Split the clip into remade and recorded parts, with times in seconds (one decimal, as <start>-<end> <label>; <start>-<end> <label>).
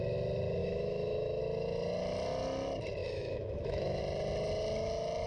0.0-0.6 recorded; 0.6-1.4 remade; 1.4-3.0 recorded; 3.0-4.0 remade; 4.0-5.3 recorded